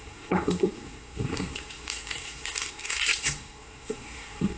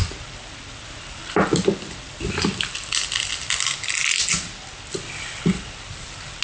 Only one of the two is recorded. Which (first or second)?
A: second